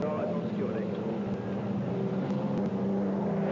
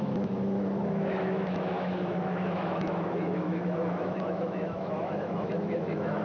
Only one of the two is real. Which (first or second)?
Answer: first